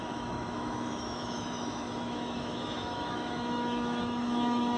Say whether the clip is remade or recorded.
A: remade